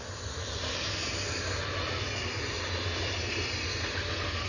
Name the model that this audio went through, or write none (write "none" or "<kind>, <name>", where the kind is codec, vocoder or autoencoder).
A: none